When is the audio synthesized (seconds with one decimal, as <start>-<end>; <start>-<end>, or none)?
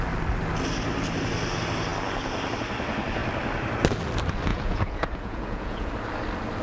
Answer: 4.5-5.9